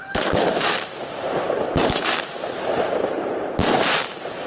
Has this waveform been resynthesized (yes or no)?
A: yes